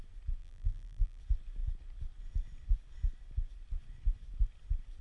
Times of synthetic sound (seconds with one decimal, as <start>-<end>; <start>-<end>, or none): 0.4-1.2